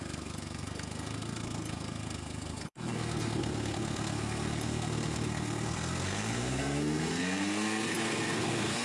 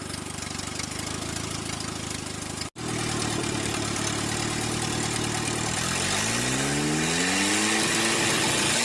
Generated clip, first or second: first